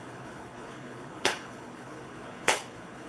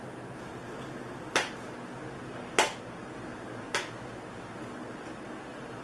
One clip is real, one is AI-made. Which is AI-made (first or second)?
first